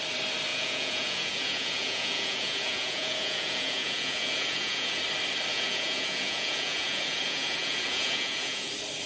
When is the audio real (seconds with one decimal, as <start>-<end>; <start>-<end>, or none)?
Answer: 0.0-0.5; 5.0-5.5; 8.7-9.1